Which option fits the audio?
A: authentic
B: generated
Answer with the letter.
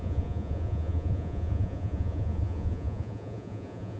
B